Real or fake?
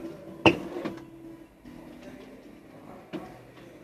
real